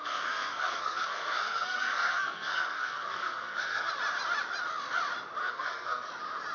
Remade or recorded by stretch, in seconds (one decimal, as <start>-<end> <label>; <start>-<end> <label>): 0.0-3.9 remade; 3.9-5.4 recorded; 5.4-6.1 remade; 6.1-6.5 recorded

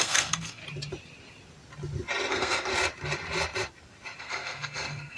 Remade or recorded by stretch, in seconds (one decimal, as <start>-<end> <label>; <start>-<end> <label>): 0.0-0.6 remade; 0.6-2.3 recorded; 2.3-2.7 remade; 2.7-4.2 recorded; 4.2-5.2 remade